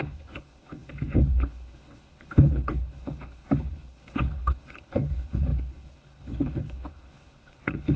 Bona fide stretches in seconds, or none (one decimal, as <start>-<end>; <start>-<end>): none